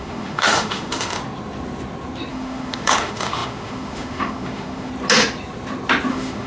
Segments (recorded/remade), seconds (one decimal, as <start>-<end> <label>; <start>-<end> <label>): 0.0-1.2 remade; 1.2-2.3 recorded; 2.3-4.9 remade; 4.9-6.1 recorded; 6.1-6.5 remade